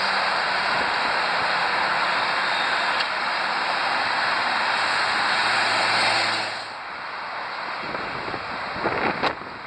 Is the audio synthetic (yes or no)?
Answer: no